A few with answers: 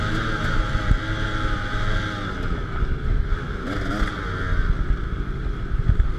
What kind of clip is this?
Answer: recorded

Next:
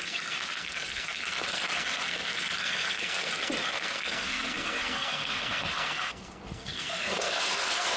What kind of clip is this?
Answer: remade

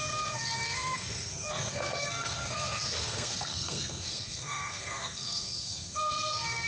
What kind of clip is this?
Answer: remade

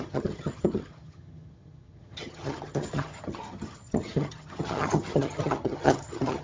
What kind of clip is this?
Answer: remade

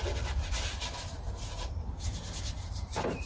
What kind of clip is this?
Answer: recorded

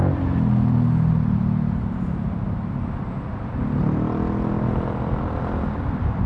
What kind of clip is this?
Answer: recorded